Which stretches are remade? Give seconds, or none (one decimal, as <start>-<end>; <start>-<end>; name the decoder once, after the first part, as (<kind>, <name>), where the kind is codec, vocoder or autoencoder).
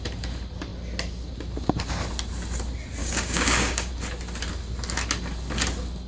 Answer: 3.0-3.9 (codec, DAC)